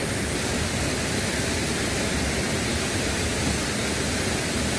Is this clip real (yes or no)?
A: yes